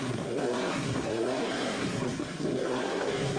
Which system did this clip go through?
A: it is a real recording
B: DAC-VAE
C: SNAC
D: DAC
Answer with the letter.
C